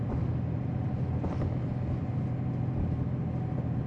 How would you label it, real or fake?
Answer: real